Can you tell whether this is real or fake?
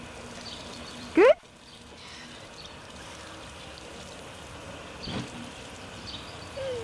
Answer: fake